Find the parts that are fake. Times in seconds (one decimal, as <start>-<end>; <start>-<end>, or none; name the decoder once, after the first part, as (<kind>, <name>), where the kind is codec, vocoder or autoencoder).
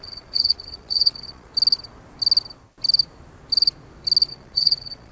0.0-1.5 (vocoder, Vocos); 4.3-5.1